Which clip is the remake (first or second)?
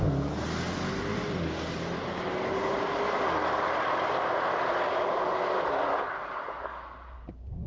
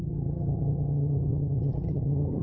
second